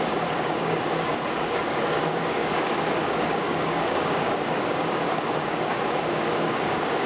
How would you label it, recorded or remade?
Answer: remade